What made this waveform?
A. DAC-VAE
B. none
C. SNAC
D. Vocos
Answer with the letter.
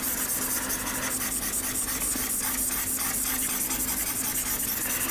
B